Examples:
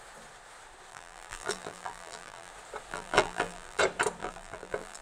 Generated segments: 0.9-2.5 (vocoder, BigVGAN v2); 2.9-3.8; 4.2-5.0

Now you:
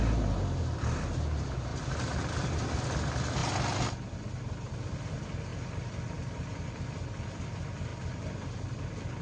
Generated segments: 1.7-2.7 (vocoder, BigVGAN v2); 7.9-8.5

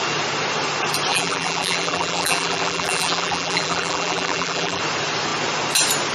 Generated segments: 1.1-4.8 (vocoder, BigVGAN v2)

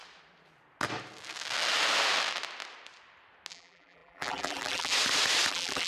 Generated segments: 3.5-4.9 (vocoder, BigVGAN v2); 5.5-5.9

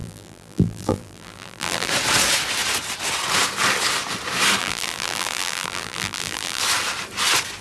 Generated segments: 0.0-1.9 (vocoder, BigVGAN v2); 4.6-6.6

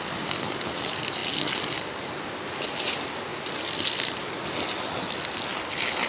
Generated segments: none

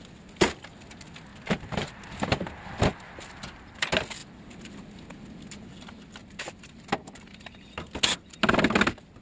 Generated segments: 1.3-2.5 (vocoder, BigVGAN v2)

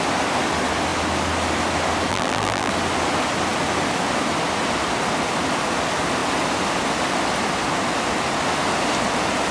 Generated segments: 2.1-2.7 (vocoder, BigVGAN v2)